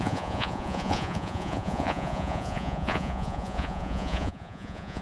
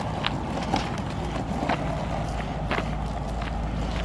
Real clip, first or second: second